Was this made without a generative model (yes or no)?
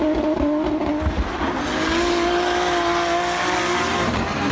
yes